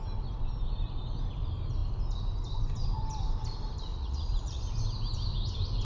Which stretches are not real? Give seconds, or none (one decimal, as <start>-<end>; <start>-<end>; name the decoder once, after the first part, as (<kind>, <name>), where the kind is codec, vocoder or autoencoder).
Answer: 3.9-4.6 (vocoder, Vocos)